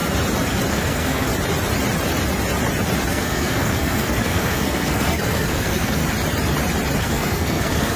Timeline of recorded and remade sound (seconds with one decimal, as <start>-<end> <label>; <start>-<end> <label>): 0.0-0.7 recorded; 0.7-1.3 remade; 1.3-3.1 recorded; 3.1-6.0 remade; 6.0-7.0 recorded; 7.0-8.0 remade